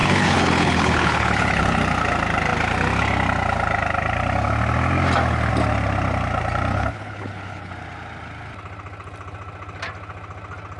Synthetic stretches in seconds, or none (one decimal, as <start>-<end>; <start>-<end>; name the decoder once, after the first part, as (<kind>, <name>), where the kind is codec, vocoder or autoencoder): 0.0-1.8 (codec, HILCodec); 6.7-7.7